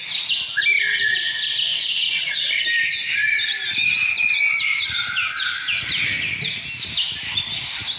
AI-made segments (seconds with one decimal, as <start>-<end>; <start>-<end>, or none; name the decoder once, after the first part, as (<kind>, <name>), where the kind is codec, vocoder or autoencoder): none